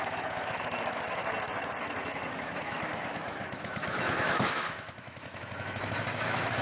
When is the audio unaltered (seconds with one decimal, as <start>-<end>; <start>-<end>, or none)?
1.2-1.8